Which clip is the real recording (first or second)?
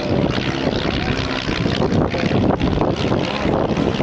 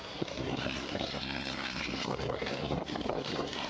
first